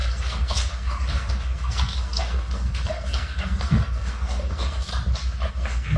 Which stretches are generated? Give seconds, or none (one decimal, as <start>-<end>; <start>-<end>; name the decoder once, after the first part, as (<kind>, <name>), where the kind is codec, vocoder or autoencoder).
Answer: 0.0-4.9 (codec, SNAC); 5.5-6.0

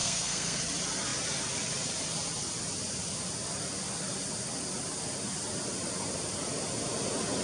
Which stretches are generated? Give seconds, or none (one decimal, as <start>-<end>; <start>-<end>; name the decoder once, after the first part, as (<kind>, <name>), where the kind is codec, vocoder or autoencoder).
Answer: 0.0-0.6 (codec, SNAC)

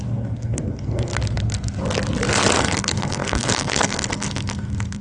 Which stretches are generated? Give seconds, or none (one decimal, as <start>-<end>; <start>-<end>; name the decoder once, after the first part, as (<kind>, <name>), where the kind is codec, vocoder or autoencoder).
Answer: 0.0-1.1 (codec, SNAC); 2.6-5.0

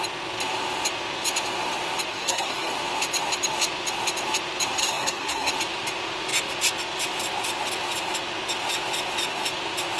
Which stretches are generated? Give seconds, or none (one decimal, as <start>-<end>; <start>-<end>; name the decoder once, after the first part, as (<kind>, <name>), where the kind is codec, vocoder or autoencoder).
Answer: 2.1-2.7 (codec, SNAC); 4.8-5.5

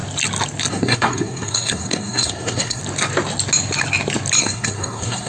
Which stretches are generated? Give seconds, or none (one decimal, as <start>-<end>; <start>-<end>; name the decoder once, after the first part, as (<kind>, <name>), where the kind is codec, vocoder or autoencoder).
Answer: 0.7-2.8 (codec, SNAC); 4.4-5.3

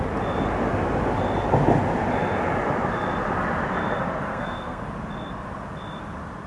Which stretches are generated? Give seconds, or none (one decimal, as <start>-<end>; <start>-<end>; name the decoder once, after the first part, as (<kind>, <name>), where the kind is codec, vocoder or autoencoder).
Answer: 4.3-4.8 (codec, SNAC)

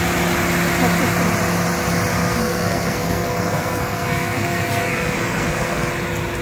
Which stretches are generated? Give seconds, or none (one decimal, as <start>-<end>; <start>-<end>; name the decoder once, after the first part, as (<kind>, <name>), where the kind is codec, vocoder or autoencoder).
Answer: 2.1-5.9 (codec, SNAC)

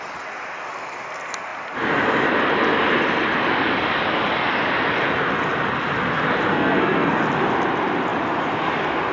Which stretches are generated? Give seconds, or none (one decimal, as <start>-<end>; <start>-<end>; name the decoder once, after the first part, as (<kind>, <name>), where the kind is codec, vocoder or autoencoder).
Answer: 6.5-7.1 (codec, SNAC)